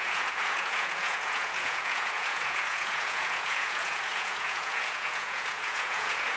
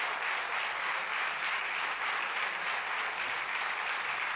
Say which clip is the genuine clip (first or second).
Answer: second